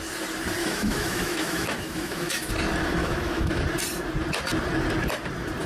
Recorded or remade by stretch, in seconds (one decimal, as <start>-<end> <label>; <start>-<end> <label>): 0.0-0.6 recorded; 0.6-2.5 remade; 2.5-3.0 recorded; 3.0-3.6 remade; 3.6-5.7 recorded